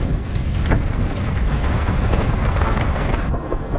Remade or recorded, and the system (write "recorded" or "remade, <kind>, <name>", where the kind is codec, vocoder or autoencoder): remade, codec, SNAC